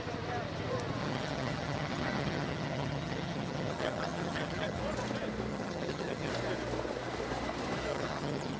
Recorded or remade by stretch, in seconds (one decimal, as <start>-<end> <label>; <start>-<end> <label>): 0.0-1.0 recorded; 1.0-4.8 remade; 4.8-5.5 recorded; 5.5-6.3 remade; 6.3-7.9 recorded; 7.9-8.6 remade